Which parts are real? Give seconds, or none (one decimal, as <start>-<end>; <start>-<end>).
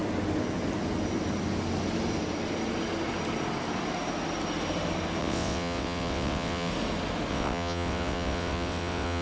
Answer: 0.0-5.2; 6.7-7.3